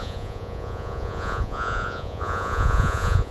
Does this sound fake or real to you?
fake